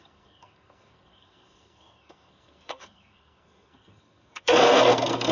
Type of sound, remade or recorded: remade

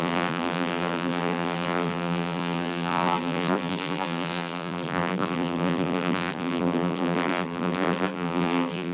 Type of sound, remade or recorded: remade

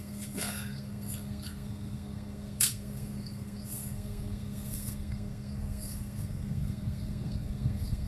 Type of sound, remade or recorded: remade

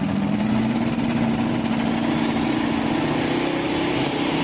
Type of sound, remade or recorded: recorded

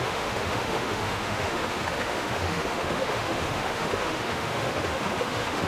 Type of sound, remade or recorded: remade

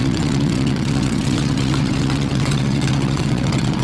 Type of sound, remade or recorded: remade